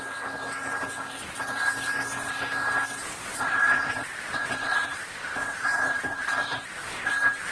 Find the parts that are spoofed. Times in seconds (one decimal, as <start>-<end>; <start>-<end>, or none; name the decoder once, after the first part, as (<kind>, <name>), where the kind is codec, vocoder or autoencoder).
3.3-7.1 (vocoder, Vocos)